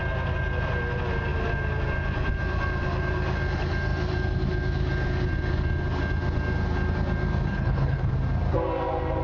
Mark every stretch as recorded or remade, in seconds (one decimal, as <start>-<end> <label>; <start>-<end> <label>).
0.0-7.5 recorded; 7.5-8.1 remade; 8.1-9.2 recorded

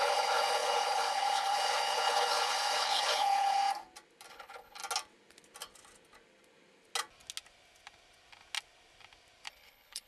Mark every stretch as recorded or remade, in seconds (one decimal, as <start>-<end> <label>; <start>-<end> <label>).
0.0-3.6 remade; 3.6-4.3 recorded; 4.3-4.8 remade; 4.8-9.5 recorded; 9.5-10.1 remade

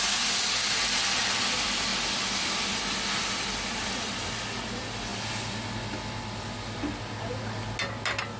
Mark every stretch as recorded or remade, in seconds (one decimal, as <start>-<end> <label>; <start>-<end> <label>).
0.0-8.4 recorded

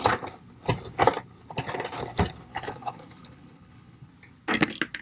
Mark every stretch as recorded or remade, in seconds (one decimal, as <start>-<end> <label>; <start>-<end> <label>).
0.0-2.5 recorded; 2.5-4.1 remade; 4.1-5.0 recorded